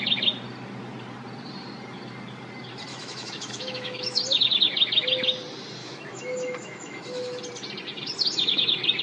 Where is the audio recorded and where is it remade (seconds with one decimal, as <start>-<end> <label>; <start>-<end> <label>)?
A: 0.0-2.9 recorded; 2.9-4.2 remade; 4.2-5.8 recorded; 5.8-7.4 remade; 7.4-9.0 recorded